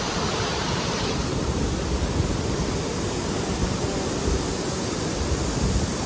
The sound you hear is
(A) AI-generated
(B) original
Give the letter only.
B